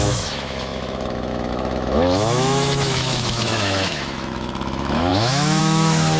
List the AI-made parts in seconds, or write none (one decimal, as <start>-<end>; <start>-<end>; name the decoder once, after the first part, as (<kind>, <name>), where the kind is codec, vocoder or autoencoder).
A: 0.0-6.2 (autoencoder, DAC-VAE)